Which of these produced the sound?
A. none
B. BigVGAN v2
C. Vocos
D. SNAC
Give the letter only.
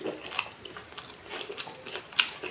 A